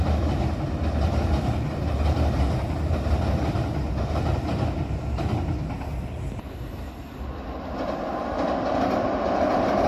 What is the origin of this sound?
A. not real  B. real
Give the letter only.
B